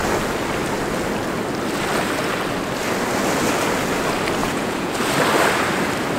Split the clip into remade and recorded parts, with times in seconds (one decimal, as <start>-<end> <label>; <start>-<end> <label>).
0.0-4.4 recorded; 4.4-5.0 remade; 5.0-6.2 recorded